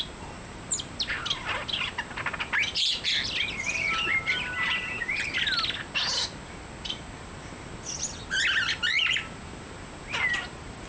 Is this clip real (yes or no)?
yes